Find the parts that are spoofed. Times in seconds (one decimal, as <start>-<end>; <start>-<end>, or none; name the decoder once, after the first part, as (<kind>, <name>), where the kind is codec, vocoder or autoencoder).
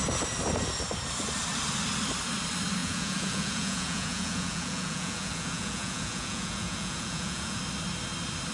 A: 2.8-7.6 (vocoder, Vocos)